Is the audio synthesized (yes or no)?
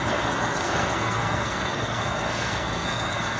yes